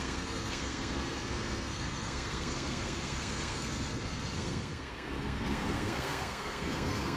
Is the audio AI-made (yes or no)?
yes